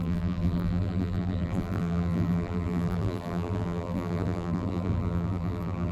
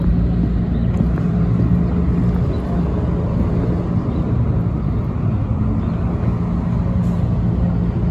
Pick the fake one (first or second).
first